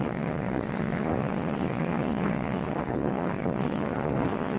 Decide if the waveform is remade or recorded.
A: remade